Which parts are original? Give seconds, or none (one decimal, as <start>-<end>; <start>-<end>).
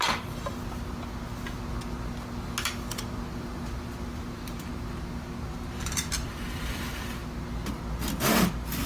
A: 0.6-4.2; 4.7-5.8; 7.2-8.9